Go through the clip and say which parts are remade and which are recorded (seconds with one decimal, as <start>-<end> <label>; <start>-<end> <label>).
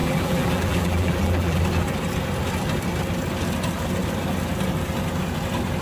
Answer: 0.0-1.6 remade; 1.6-5.8 recorded